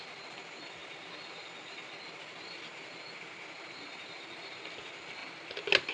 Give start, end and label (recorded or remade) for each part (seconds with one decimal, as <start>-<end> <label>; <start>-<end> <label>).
0.0-5.9 recorded